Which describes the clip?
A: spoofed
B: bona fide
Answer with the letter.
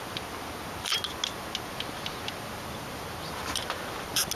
B